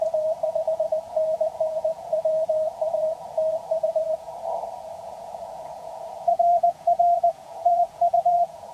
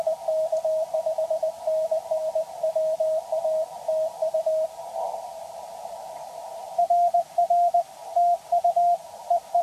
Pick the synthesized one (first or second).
first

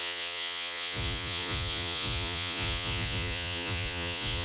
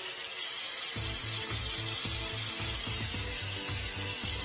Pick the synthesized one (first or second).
first